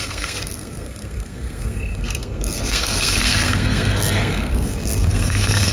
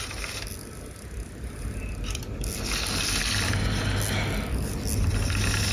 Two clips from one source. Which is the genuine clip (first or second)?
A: second